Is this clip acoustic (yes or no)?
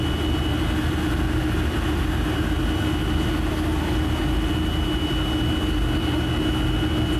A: yes